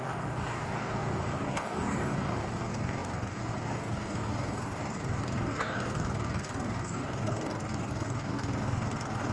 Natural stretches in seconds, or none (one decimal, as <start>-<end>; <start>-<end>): none